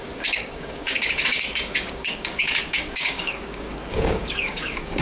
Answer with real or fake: fake